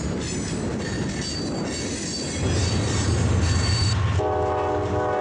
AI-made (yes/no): no